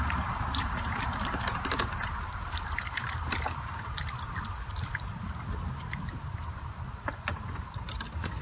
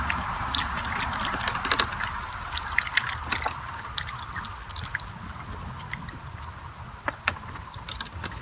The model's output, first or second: first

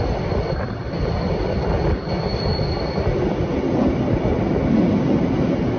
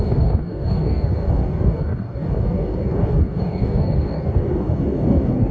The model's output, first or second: second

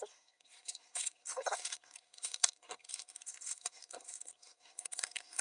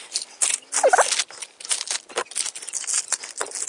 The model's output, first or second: first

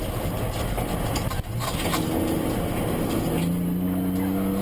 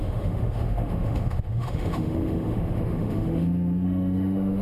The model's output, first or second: second